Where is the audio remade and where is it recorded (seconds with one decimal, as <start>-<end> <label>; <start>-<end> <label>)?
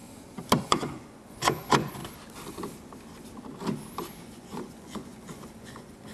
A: 0.0-0.6 recorded; 0.6-2.0 remade; 2.0-4.2 recorded; 4.2-6.1 remade